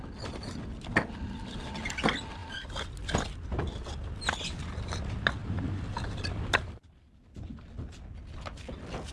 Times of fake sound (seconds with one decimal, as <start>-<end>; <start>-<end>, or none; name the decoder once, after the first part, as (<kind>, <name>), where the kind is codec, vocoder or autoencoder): 2.4-4.4 (vocoder, BigVGAN v2); 5.4-7.1